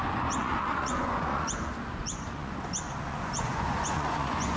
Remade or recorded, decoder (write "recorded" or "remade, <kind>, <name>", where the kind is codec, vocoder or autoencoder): remade, vocoder, Vocos